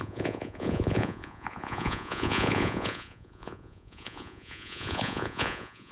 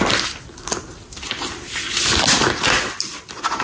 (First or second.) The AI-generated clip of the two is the first